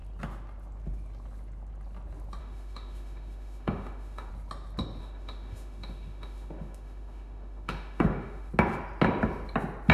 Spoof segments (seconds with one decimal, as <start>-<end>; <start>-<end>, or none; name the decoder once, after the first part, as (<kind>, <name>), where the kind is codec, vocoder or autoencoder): 2.4-4.3 (autoencoder, DAC-VAE); 5.0-8.5